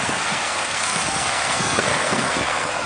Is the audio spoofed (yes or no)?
yes